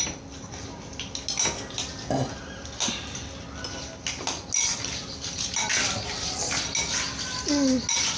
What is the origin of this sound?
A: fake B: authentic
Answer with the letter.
B